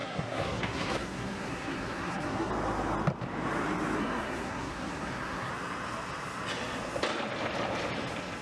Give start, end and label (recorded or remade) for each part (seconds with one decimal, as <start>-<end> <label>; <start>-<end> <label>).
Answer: 0.0-2.5 remade; 2.5-4.0 recorded; 4.0-5.5 remade; 5.5-8.4 recorded